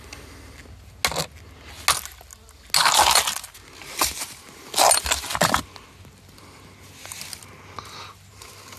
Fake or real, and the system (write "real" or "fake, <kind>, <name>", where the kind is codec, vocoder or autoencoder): real